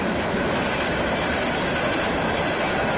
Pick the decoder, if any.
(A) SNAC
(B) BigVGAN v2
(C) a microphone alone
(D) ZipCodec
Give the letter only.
C